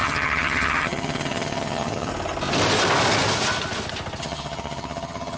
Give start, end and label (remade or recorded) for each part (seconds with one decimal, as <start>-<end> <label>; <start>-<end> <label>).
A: 0.0-2.1 remade; 2.1-4.2 recorded; 4.2-5.4 remade